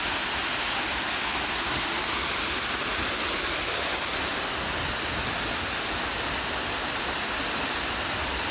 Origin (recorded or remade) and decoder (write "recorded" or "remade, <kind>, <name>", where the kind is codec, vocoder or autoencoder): recorded